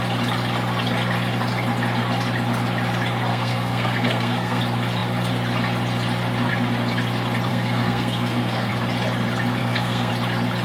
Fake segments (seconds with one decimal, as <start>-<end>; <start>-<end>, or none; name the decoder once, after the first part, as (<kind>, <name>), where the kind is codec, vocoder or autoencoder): 3.3-4.6 (codec, SNAC); 7.5-8.7; 9.6-10.1